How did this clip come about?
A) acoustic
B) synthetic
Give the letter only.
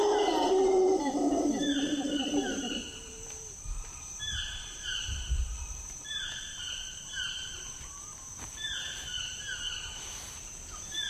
B